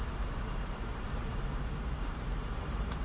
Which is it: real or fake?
fake